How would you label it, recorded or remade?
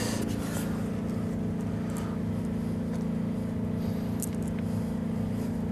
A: recorded